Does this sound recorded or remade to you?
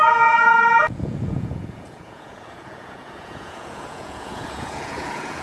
remade